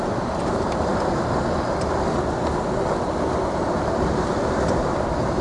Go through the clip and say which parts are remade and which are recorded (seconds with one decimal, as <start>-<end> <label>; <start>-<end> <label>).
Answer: 0.0-5.4 recorded